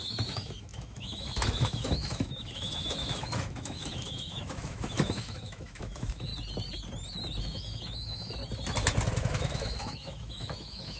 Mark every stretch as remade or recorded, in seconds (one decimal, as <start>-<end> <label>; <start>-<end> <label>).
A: 0.0-6.3 remade; 6.3-7.4 recorded; 7.4-8.4 remade; 8.4-9.2 recorded; 9.2-11.0 remade